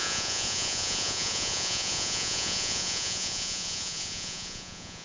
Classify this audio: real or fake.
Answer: fake